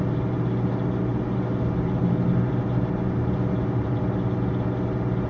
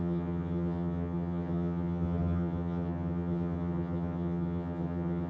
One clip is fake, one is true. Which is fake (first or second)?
second